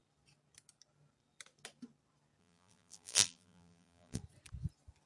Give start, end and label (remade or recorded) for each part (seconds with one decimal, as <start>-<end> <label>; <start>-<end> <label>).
0.0-2.4 recorded; 2.4-4.2 remade; 4.2-5.1 recorded